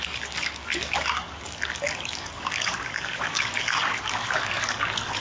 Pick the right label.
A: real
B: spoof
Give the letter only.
B